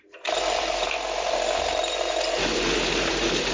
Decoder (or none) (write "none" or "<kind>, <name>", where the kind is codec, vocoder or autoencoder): vocoder, BigVGAN v2